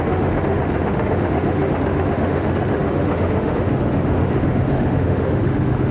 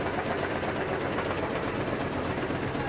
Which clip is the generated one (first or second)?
first